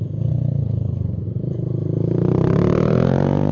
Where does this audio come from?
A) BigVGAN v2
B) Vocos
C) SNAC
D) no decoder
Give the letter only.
A